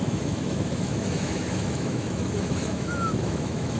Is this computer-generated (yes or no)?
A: yes